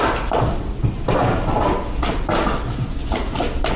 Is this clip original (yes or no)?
yes